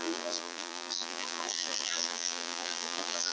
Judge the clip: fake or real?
fake